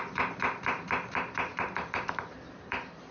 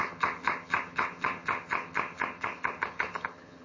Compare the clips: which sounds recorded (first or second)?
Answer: first